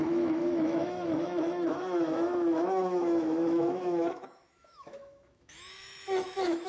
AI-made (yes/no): yes